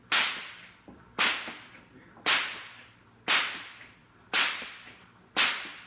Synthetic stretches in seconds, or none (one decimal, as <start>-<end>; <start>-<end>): 4.0-5.3